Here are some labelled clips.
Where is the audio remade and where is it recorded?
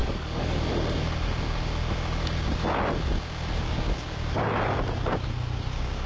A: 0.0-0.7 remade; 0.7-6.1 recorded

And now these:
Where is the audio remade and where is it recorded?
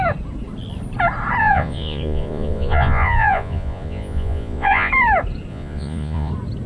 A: 0.0-1.4 recorded; 1.4-4.9 remade; 4.9-5.5 recorded; 5.5-6.3 remade; 6.3-6.7 recorded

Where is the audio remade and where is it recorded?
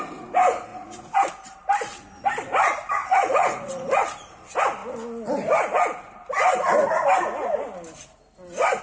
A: 0.0-0.7 recorded; 0.7-1.3 remade; 1.3-3.0 recorded; 3.0-3.7 remade; 3.7-8.8 recorded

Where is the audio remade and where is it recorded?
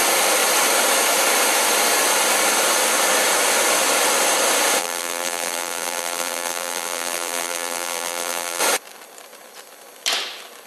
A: 0.0-4.8 recorded; 4.8-8.6 remade; 8.6-10.7 recorded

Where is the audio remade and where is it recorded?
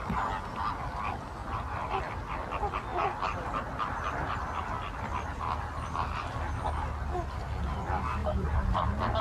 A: 0.0-1.4 recorded; 1.4-2.0 remade; 2.0-2.9 recorded; 2.9-5.5 remade; 5.5-9.2 recorded